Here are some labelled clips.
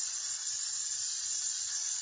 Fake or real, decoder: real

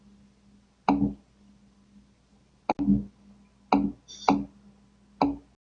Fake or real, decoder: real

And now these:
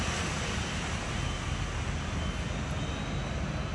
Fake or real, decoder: real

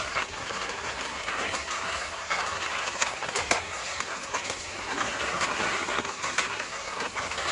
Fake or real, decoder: fake, codec, SNAC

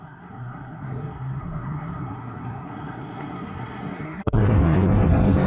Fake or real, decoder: fake, codec, SNAC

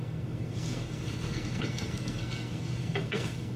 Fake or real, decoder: fake, codec, SNAC